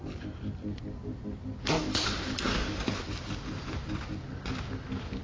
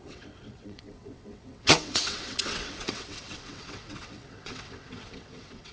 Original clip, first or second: first